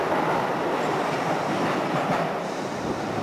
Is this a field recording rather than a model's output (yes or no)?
no